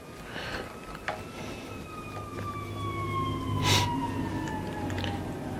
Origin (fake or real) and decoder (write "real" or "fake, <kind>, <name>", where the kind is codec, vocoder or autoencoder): real